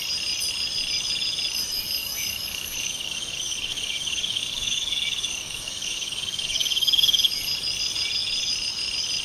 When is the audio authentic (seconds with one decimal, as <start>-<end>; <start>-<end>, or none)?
0.0-2.0; 7.2-9.2